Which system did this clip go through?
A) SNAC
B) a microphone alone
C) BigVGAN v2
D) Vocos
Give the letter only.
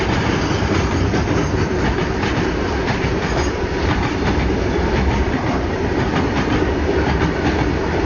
C